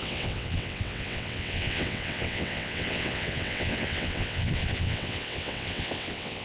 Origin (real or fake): fake